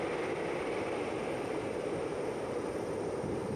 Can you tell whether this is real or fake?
real